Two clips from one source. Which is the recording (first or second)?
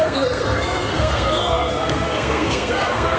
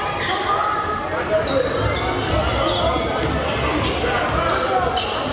second